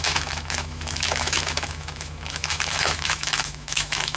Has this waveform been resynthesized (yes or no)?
yes